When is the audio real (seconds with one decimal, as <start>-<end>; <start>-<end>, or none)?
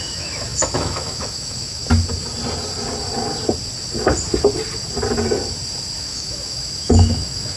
1.8-6.0